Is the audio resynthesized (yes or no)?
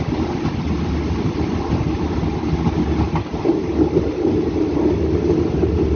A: no